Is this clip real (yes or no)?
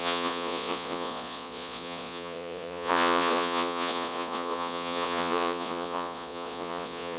no